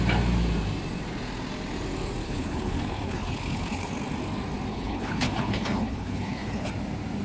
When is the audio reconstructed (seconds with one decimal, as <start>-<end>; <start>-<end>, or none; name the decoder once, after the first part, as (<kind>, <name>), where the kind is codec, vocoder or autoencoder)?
2.2-3.9 (codec, HILCodec); 4.7-6.7